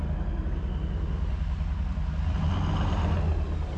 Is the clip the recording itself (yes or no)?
yes